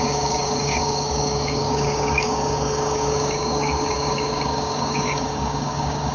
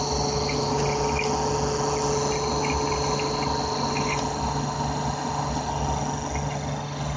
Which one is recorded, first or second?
second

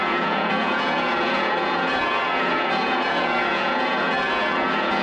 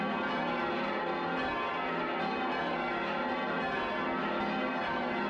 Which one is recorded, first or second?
second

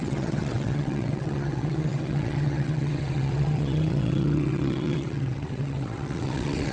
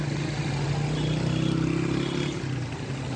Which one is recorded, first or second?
second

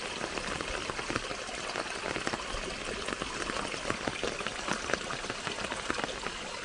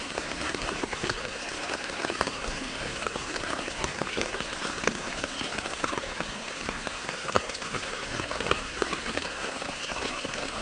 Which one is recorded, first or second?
first